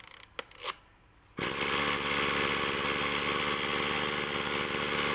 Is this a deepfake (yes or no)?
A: no